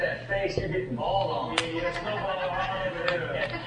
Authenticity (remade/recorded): recorded